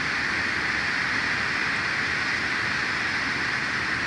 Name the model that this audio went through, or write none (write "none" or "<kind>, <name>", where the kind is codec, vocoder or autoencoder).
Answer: none